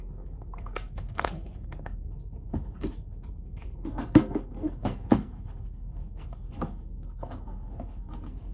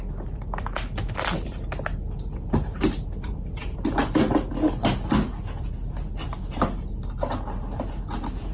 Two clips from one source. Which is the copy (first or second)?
first